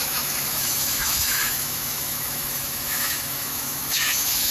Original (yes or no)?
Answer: no